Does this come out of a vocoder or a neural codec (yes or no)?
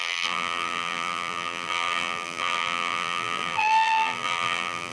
yes